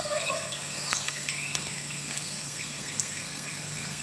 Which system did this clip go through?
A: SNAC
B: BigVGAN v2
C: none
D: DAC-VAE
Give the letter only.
A